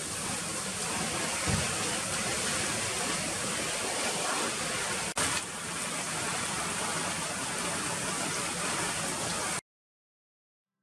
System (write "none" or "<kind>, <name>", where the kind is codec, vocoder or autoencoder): none